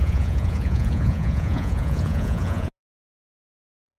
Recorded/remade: remade